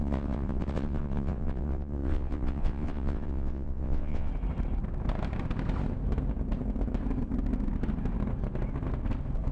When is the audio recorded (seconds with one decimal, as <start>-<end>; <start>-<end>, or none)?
4.3-9.5